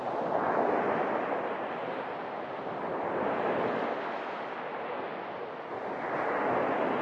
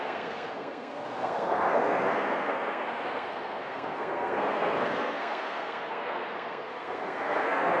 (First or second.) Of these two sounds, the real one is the first